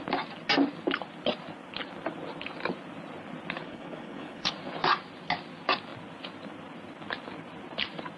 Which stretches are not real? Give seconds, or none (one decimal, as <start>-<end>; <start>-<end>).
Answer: 3.6-4.5